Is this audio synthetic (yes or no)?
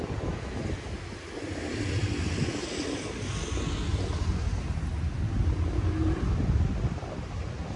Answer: no